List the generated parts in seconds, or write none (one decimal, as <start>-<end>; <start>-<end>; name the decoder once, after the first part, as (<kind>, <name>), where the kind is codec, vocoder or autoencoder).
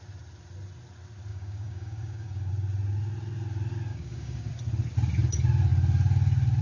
1.3-2.5 (codec, DAC); 3.9-4.5